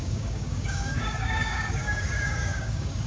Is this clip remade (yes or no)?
yes